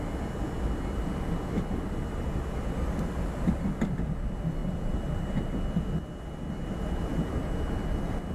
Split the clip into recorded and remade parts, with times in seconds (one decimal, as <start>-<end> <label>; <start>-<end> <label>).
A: 0.0-8.3 recorded